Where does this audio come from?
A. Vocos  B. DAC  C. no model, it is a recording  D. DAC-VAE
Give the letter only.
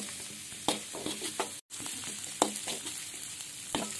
C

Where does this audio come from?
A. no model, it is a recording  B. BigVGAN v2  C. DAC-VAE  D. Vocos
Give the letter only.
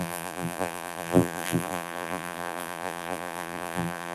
B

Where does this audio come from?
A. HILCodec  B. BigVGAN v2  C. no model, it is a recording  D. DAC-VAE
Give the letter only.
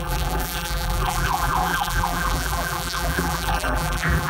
B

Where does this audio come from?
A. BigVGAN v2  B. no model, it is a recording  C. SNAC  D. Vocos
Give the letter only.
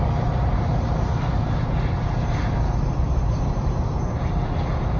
A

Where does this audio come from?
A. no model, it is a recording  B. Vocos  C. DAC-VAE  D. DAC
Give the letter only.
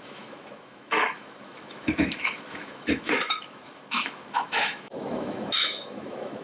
C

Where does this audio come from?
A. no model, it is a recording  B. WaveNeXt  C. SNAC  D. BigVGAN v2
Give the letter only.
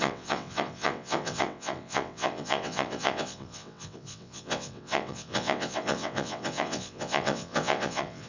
B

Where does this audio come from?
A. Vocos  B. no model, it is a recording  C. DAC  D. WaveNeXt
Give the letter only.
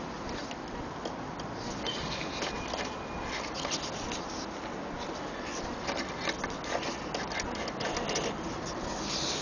B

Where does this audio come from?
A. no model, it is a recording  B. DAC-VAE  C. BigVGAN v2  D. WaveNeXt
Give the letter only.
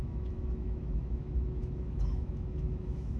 B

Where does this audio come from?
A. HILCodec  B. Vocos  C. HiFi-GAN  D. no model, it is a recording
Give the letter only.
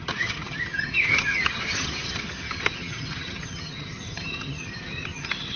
C